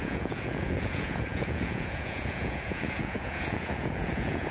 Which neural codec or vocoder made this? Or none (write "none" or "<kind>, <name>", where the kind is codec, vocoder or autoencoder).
vocoder, Vocos